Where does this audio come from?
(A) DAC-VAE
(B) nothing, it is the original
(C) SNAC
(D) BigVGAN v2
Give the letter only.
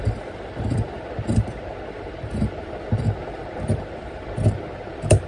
D